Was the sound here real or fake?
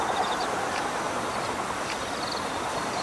real